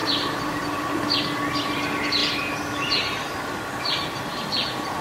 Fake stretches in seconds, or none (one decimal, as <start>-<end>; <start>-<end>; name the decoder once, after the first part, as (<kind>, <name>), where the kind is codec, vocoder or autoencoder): 0.0-0.6 (vocoder, BigVGAN v2)